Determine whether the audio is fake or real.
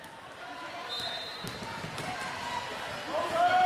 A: real